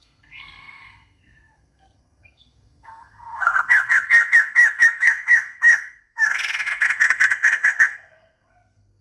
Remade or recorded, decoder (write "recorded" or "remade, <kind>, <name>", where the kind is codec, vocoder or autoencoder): remade, codec, SNAC